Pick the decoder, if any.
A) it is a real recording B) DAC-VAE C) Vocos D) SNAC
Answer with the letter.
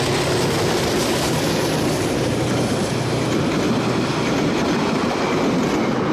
A